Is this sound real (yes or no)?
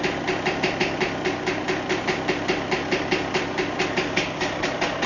yes